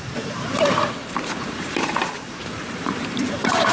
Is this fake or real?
fake